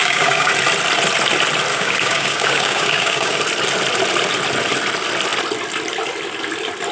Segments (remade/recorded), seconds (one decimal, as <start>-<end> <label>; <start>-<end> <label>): 0.0-0.5 remade; 0.5-1.7 recorded; 1.7-3.4 remade; 3.4-6.9 recorded